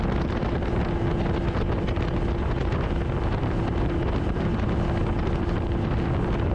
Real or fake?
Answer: real